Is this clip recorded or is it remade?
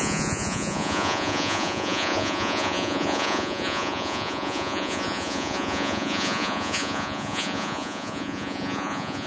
remade